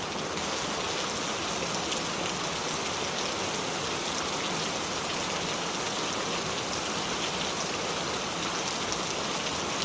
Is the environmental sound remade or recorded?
recorded